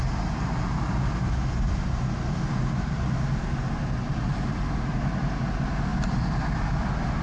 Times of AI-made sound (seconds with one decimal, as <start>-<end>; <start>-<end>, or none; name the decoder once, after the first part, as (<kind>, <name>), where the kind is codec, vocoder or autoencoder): 5.9-7.2 (vocoder, BigVGAN v2)